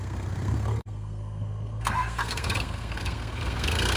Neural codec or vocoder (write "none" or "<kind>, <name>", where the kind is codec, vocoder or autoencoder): codec, SNAC